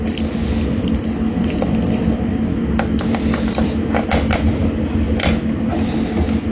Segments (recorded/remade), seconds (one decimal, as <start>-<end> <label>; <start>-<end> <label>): 0.0-0.4 recorded; 0.4-3.7 remade; 3.7-6.5 recorded